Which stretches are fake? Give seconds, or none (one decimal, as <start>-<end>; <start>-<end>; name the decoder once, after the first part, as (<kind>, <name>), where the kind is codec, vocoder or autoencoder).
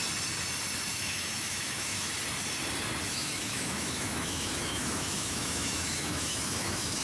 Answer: 0.9-2.1 (autoencoder, DAC-VAE); 3.1-7.0